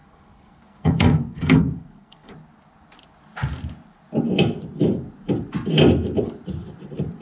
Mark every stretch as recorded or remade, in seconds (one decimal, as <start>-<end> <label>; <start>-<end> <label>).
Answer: 0.0-2.3 remade; 2.3-7.2 recorded